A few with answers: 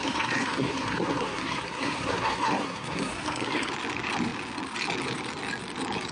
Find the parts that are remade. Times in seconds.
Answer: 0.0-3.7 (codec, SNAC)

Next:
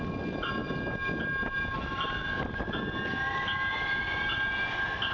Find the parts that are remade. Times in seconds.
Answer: none

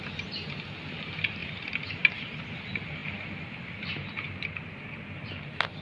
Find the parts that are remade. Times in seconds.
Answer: none

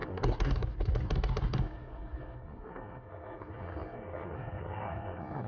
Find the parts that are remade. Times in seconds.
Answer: 0.0-5.5 (codec, SNAC)

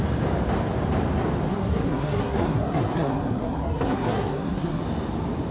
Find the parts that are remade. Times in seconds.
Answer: 1.5-4.8 (codec, SNAC)

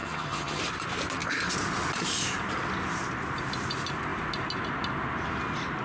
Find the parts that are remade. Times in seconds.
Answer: 0.0-0.6 (vocoder, HiFi-GAN)

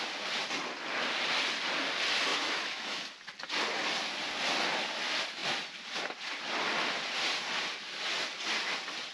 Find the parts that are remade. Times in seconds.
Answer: 2.3-3.1 (autoencoder, DAC-VAE)

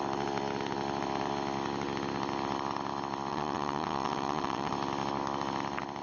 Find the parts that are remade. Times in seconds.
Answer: 3.3-4.7 (vocoder, WaveNeXt)